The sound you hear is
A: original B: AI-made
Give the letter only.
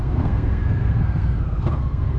B